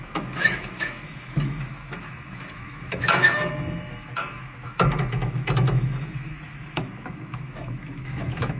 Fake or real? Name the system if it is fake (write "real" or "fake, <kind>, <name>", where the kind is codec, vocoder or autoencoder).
fake, autoencoder, DAC-VAE